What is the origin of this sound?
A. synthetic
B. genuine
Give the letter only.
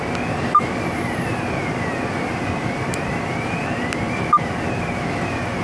B